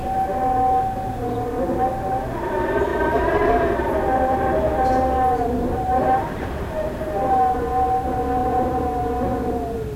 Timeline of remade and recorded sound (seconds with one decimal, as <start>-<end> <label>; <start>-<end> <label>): 0.0-2.9 recorded; 2.9-7.5 remade; 7.5-8.4 recorded; 8.4-9.0 remade; 9.0-10.0 recorded